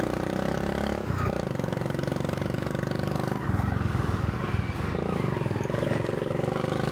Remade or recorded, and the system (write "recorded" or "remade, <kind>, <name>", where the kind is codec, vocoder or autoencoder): remade, codec, DAC